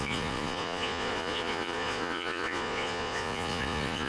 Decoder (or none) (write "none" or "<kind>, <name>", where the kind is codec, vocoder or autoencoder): vocoder, Vocos